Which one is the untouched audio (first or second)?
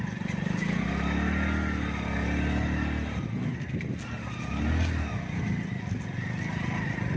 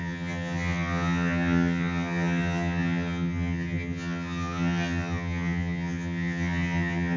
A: first